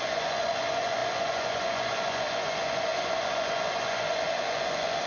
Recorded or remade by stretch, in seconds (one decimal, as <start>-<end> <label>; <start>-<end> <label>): 0.0-5.1 remade